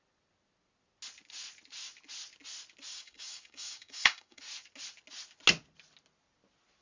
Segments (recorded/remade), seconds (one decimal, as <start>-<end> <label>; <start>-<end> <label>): 0.0-2.9 recorded; 2.9-4.4 remade; 4.4-6.8 recorded